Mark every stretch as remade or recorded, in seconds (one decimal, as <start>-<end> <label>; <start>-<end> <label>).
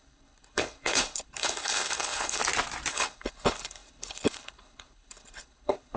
0.0-2.4 remade; 2.4-2.9 recorded; 2.9-6.0 remade